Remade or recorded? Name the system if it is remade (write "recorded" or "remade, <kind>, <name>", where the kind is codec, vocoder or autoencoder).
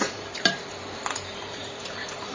remade, vocoder, BigVGAN v2